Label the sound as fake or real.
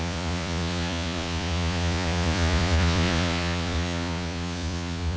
fake